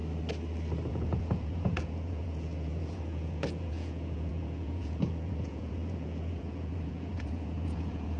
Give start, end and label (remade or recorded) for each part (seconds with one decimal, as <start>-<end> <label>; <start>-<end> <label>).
0.0-0.9 recorded; 0.9-8.2 remade